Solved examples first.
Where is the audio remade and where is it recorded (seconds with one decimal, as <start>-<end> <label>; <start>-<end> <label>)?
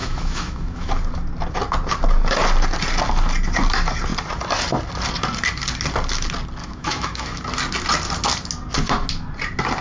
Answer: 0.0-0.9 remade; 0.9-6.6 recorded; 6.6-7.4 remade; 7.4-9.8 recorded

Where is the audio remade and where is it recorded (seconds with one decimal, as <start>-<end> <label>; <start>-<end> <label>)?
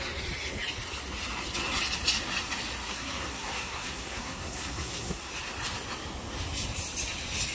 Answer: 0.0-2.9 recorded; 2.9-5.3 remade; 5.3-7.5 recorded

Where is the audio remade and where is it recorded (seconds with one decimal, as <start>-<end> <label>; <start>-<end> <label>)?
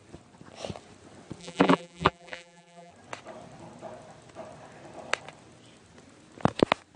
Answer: 0.0-1.4 recorded; 1.4-2.9 remade; 2.9-7.0 recorded